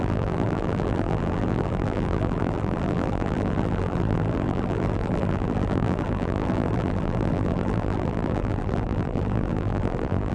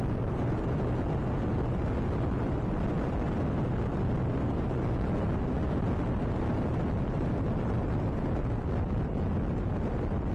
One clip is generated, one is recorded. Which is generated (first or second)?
first